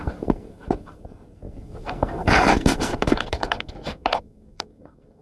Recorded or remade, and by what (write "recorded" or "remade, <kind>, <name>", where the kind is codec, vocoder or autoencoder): remade, codec, SNAC